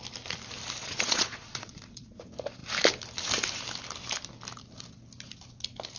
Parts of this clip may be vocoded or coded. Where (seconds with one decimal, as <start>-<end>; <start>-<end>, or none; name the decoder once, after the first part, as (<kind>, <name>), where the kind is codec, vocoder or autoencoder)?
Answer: 0.8-2.2 (vocoder, Vocos)